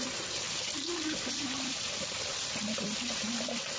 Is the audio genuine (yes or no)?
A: no